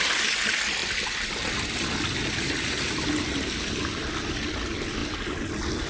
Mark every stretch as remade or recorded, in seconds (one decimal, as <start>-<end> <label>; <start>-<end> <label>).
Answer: 0.0-5.9 recorded